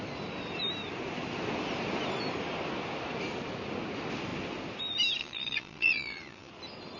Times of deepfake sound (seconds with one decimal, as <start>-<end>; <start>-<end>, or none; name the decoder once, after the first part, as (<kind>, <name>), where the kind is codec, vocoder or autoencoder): 5.2-6.5 (vocoder, Vocos)